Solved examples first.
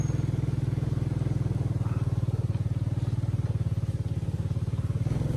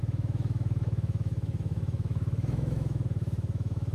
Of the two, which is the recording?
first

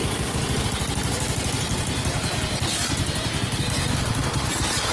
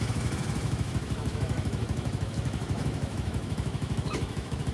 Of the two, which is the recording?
first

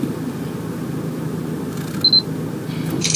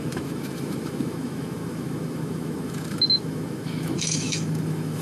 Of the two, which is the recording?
first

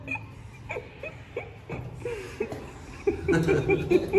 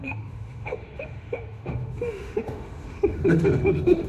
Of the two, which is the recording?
first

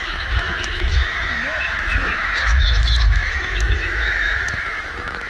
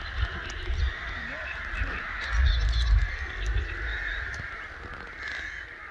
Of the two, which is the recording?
second